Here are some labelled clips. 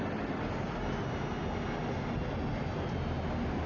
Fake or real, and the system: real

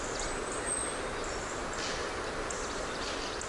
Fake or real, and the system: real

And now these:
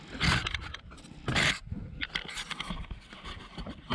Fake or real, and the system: real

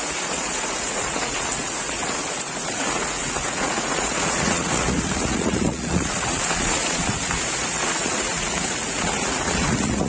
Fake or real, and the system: fake, vocoder, Vocos